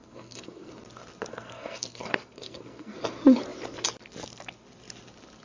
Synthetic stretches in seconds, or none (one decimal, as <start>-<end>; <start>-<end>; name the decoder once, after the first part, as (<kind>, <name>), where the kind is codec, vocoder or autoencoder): 0.0-0.7 (codec, SNAC); 1.3-3.0